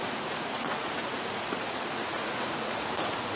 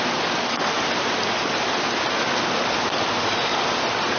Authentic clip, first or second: second